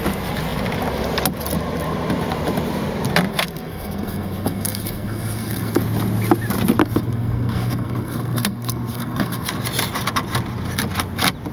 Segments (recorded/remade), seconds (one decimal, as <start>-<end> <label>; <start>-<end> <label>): 0.0-3.3 recorded; 3.3-5.8 remade; 5.8-6.8 recorded; 6.8-9.5 remade; 9.5-11.5 recorded